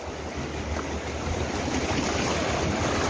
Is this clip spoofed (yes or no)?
no